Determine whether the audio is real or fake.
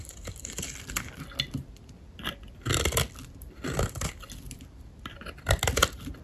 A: fake